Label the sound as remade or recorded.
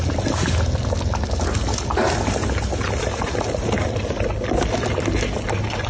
recorded